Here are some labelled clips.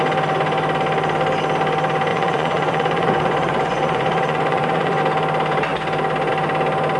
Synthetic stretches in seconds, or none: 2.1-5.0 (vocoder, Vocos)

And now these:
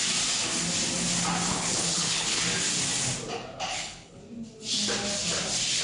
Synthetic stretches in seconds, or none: 1.5-2.4 (codec, HILCodec); 3.7-4.2